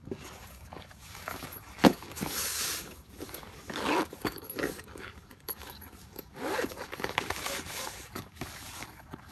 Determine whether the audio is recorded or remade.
remade